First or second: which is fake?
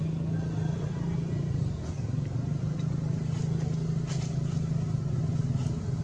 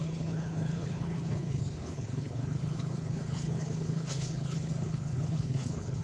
second